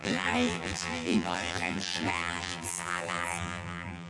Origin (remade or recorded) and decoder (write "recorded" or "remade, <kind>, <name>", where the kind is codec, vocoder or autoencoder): remade, vocoder, BigVGAN v2